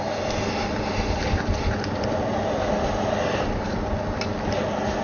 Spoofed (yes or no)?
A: no